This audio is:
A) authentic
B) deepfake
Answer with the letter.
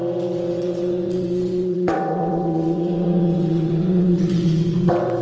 B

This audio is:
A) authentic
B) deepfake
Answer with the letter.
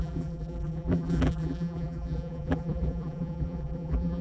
B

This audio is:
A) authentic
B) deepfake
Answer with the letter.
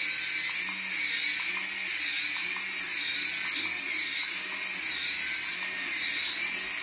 A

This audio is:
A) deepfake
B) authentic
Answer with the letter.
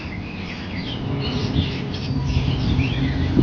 A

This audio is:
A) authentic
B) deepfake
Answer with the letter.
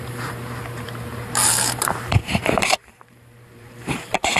B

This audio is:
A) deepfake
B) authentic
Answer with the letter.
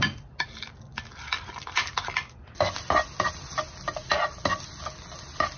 B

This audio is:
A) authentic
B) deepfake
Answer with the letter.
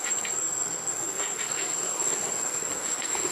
B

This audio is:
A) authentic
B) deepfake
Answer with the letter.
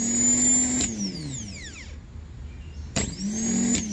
A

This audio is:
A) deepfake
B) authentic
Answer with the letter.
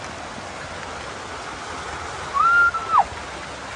B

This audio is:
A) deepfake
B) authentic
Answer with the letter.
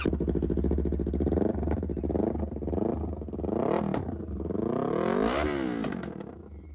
B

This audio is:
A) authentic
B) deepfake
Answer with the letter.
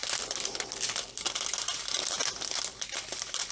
B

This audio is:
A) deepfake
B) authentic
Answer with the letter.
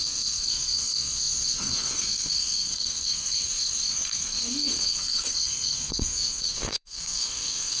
A